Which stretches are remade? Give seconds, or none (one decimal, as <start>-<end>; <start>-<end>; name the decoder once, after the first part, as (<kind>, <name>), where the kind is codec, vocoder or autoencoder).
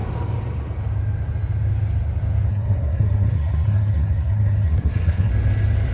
2.5-5.3 (codec, SNAC)